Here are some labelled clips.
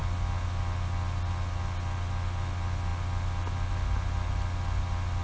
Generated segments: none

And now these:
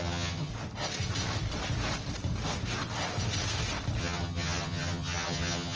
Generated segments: 0.0-0.5 (vocoder, HiFi-GAN); 4.0-5.8

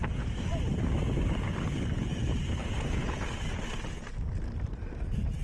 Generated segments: 2.6-3.3 (vocoder, Vocos)

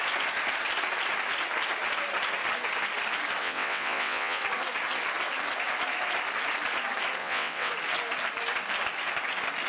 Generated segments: 3.4-4.4 (vocoder, WaveNeXt); 7.2-7.7